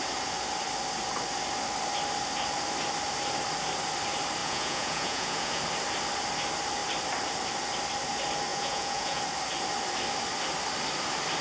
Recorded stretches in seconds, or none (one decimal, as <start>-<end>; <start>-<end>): 0.0-4.4; 5.6-8.5; 9.2-11.4